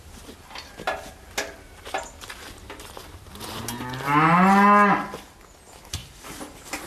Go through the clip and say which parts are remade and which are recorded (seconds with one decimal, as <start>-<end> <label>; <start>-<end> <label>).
0.0-3.0 recorded; 3.0-3.6 remade; 3.6-6.0 recorded; 6.0-6.9 remade